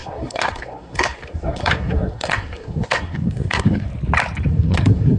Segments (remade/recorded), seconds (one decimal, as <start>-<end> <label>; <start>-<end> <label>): 0.0-3.9 remade; 3.9-4.5 recorded; 4.5-5.2 remade